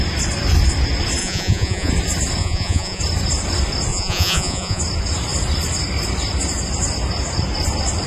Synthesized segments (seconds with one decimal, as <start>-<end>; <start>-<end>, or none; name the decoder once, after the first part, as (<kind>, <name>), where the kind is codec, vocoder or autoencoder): 1.2-1.9 (vocoder, Vocos); 2.4-3.0; 3.9-4.8